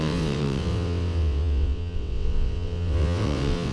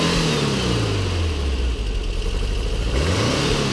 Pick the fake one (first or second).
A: first